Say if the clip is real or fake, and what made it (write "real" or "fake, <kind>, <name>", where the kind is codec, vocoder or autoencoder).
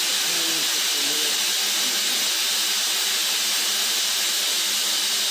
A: real